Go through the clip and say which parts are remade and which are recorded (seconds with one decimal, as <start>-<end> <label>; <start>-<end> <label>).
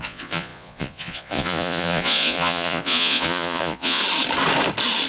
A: 0.0-4.0 remade; 4.0-5.1 recorded